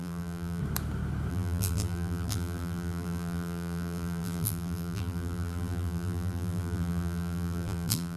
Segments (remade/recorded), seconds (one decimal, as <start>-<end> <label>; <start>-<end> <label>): 0.0-0.6 remade; 0.6-1.3 recorded; 1.3-8.2 remade